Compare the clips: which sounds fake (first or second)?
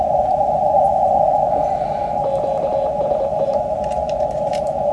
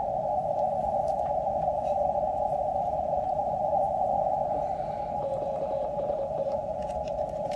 second